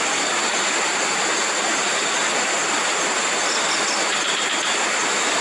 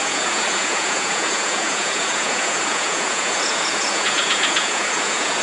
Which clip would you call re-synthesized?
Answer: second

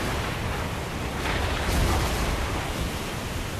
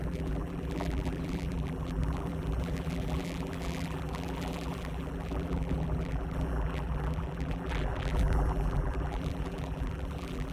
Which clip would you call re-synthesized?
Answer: second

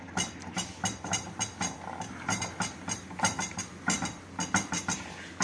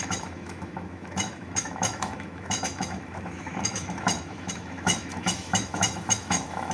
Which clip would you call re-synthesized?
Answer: second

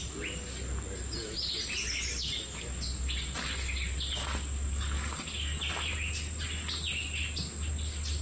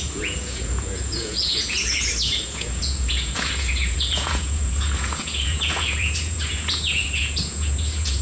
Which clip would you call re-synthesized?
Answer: second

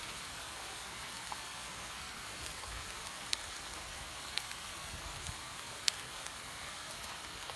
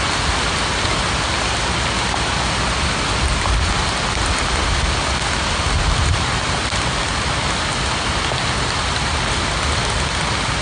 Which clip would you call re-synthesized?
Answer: first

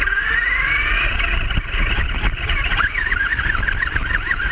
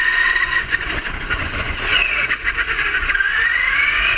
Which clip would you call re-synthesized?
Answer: second